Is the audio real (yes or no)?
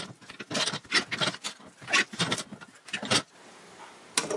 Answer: yes